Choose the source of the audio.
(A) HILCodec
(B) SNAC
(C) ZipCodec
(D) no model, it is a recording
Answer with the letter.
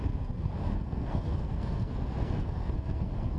B